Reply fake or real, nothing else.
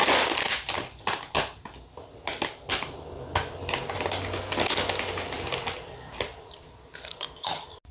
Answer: real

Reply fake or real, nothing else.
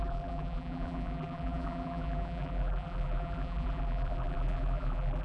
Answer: fake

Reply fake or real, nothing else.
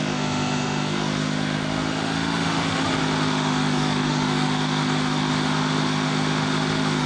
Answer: fake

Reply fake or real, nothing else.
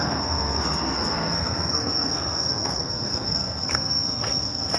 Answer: fake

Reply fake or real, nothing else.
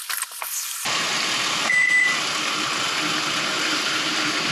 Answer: real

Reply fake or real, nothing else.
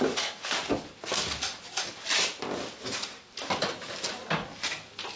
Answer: real